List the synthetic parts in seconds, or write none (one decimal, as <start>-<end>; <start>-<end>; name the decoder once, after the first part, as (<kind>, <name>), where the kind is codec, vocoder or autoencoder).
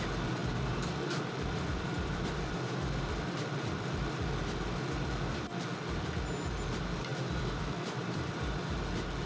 0.4-4.2 (vocoder, BigVGAN v2); 7.1-8.7